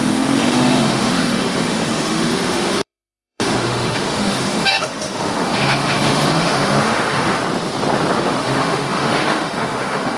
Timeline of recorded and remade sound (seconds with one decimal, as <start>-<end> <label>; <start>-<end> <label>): 0.0-7.4 remade; 7.4-8.1 recorded; 8.1-10.2 remade